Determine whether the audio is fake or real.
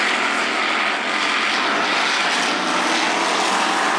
real